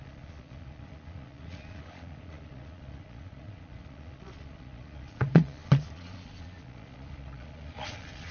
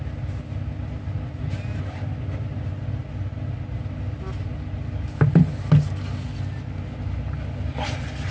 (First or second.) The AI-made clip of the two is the first